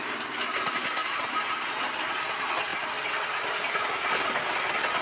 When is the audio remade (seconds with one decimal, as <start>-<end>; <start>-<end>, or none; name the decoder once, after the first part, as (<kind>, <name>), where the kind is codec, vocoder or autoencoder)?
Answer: none